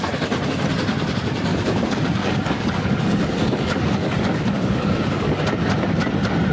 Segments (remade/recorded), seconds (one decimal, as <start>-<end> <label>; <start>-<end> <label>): 0.0-1.5 recorded; 1.5-5.4 remade; 5.4-6.5 recorded